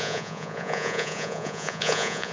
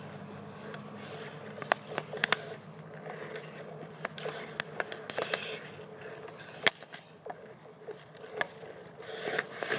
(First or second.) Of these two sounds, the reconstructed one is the first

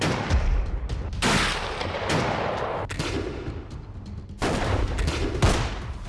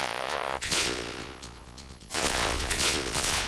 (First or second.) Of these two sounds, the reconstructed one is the second